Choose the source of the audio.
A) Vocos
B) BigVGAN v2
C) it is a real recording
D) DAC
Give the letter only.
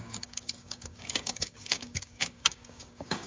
D